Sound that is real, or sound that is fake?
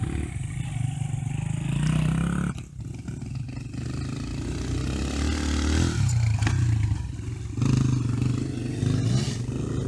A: real